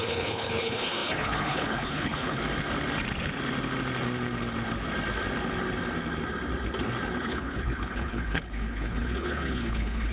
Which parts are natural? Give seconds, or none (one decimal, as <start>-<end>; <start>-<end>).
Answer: 2.4-7.2